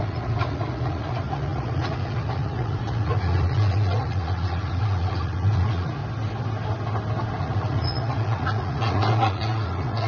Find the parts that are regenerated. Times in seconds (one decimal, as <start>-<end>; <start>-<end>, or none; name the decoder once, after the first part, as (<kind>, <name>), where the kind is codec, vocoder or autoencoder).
0.0-6.0 (vocoder, Vocos); 7.4-10.1